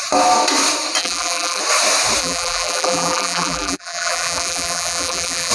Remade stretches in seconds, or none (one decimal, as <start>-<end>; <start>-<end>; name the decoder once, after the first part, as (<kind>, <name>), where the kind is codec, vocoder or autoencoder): 1.0-1.6 (vocoder, BigVGAN v2); 2.2-5.5